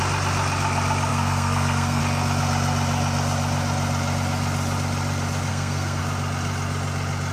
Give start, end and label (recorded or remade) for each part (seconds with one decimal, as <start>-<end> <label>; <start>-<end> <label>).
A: 0.0-1.1 recorded; 1.1-2.0 remade; 2.0-5.5 recorded; 5.5-6.0 remade; 6.0-7.3 recorded

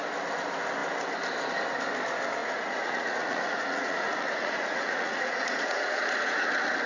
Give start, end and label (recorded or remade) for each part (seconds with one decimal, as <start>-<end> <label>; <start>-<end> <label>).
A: 0.0-2.4 recorded; 2.4-6.5 remade; 6.5-6.9 recorded